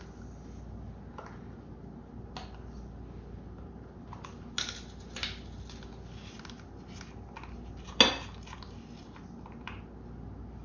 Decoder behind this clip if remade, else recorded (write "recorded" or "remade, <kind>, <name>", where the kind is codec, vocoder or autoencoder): recorded